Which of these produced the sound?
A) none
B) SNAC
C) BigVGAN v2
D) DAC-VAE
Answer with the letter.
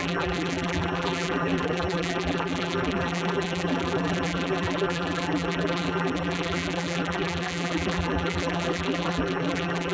C